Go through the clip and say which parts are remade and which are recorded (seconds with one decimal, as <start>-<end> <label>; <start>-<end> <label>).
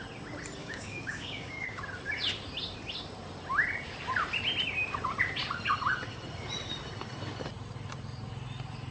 0.0-0.6 recorded; 0.6-1.8 remade; 1.8-8.9 recorded